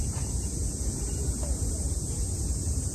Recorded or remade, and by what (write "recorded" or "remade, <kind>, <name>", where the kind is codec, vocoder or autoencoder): remade, vocoder, BigVGAN v2